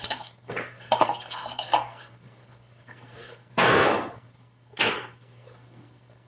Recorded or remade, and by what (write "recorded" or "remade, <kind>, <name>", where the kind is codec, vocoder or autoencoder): remade, codec, SNAC